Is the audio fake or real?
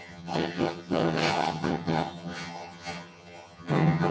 fake